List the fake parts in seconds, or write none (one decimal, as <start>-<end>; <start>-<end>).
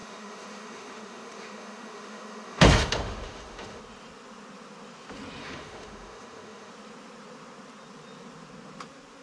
0.0-3.8; 5.4-6.7